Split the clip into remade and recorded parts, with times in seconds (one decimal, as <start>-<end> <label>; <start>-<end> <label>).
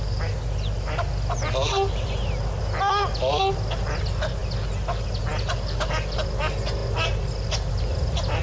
0.0-8.4 recorded